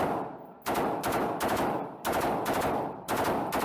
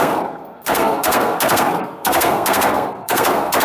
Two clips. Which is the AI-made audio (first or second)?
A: second